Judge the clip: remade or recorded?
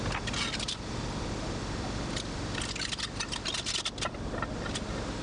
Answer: recorded